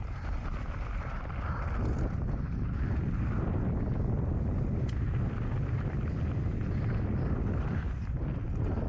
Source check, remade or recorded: recorded